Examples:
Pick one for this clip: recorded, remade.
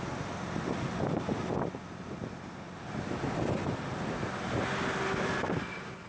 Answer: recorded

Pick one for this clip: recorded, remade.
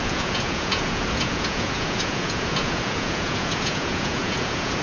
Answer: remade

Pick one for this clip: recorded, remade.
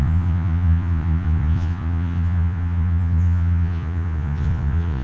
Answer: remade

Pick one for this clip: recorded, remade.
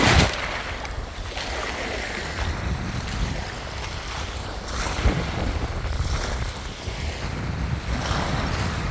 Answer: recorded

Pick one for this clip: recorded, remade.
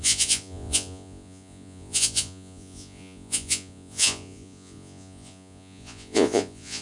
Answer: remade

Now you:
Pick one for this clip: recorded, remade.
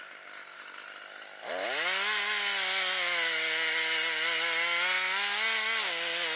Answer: recorded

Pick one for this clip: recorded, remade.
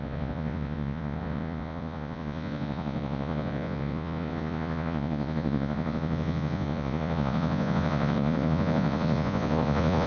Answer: remade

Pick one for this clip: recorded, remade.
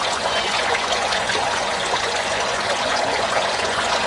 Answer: remade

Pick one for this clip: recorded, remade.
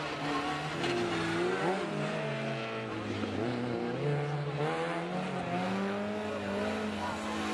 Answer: recorded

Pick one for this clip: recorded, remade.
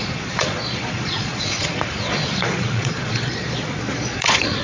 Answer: remade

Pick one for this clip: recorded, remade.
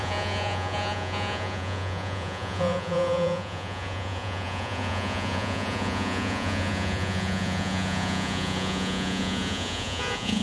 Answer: remade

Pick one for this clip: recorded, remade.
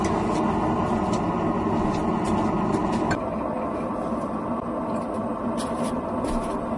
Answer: recorded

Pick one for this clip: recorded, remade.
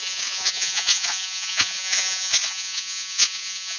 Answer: remade